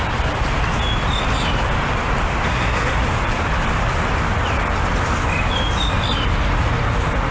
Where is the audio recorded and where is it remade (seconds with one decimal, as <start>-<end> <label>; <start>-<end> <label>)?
0.0-2.5 recorded; 2.5-3.0 remade; 3.0-7.3 recorded

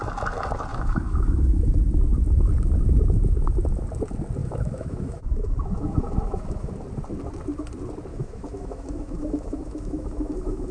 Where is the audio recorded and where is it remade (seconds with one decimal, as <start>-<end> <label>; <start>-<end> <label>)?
0.0-0.7 recorded; 0.7-1.6 remade; 1.6-4.4 recorded; 4.4-6.7 remade; 6.7-8.1 recorded; 8.1-10.7 remade

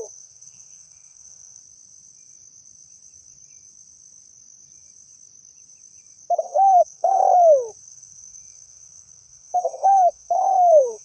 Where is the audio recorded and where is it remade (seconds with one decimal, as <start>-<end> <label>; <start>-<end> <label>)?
0.0-1.6 remade; 1.6-6.4 recorded; 6.4-7.2 remade; 7.2-7.8 recorded; 7.8-11.0 remade

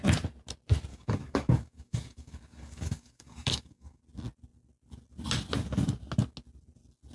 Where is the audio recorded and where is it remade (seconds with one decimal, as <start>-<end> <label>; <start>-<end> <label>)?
0.0-0.9 recorded; 0.9-4.0 remade; 4.0-7.1 recorded

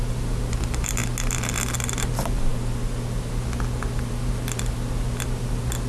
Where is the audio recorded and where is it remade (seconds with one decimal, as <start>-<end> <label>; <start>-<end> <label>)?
0.0-5.9 recorded